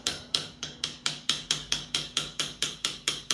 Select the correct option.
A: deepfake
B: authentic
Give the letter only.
A